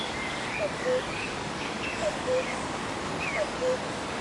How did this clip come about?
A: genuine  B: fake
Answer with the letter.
B